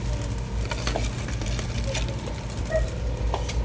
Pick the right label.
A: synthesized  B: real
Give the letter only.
B